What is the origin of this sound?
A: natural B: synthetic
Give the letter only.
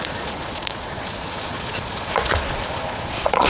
B